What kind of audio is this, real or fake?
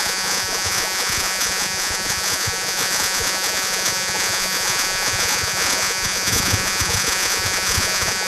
fake